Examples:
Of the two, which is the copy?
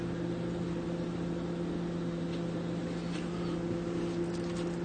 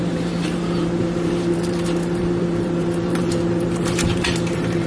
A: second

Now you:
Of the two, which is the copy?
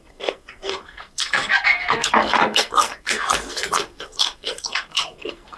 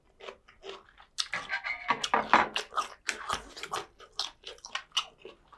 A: first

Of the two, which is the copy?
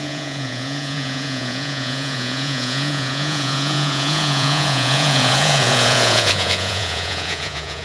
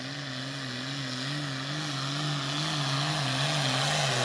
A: first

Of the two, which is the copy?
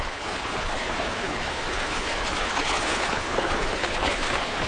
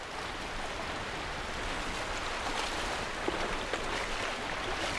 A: first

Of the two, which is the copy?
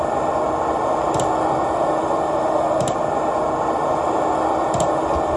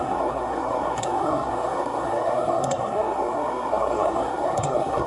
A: second